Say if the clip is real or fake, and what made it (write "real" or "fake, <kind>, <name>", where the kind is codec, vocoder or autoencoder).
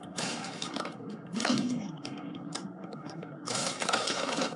fake, codec, SNAC